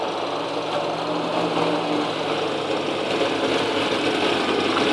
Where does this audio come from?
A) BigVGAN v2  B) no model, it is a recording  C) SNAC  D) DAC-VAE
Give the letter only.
B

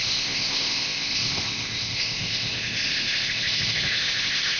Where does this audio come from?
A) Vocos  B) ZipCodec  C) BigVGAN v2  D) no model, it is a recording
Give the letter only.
B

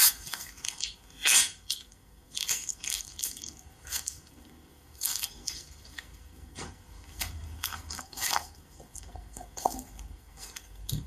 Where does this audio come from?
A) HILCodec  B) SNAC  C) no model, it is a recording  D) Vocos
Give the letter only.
B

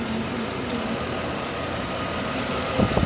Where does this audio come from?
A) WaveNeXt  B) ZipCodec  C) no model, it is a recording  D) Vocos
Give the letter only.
C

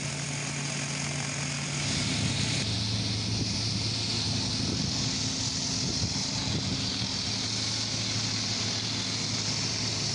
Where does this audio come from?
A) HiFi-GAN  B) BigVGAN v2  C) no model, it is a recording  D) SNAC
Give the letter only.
C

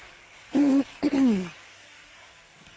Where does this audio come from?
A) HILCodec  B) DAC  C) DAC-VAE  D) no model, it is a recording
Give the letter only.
B